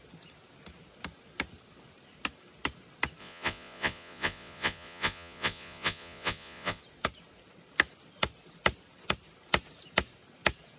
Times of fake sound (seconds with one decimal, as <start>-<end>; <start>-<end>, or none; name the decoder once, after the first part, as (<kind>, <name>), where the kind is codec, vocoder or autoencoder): 3.2-6.8 (vocoder, Vocos)